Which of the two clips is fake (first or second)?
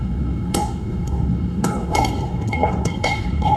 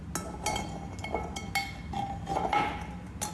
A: first